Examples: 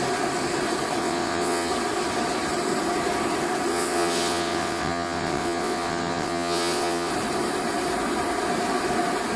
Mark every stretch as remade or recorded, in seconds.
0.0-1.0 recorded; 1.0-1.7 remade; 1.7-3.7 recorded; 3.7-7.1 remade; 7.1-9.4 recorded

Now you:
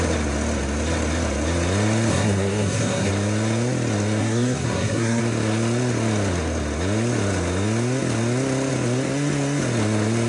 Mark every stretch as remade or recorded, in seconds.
0.0-2.1 recorded; 2.1-3.1 remade; 3.1-4.2 recorded; 4.2-5.2 remade; 5.2-10.3 recorded

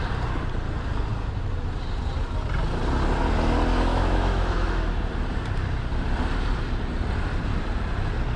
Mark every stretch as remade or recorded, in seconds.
0.0-3.9 recorded; 3.9-4.8 remade; 4.8-8.4 recorded

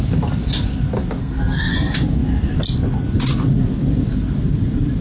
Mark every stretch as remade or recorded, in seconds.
0.0-1.2 recorded; 1.2-1.7 remade; 1.7-5.0 recorded